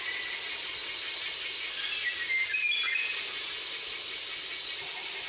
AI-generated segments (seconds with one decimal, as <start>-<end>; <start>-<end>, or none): none